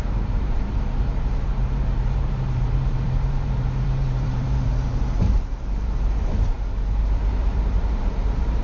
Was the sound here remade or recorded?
remade